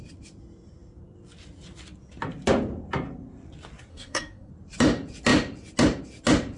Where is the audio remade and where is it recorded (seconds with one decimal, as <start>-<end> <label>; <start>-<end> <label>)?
0.0-3.9 recorded; 3.9-4.5 remade; 4.5-6.6 recorded